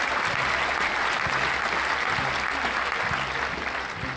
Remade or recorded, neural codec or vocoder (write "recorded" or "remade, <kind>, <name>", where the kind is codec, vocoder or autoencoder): recorded